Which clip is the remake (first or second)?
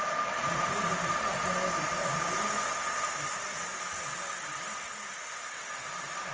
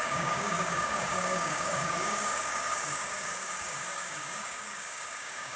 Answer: second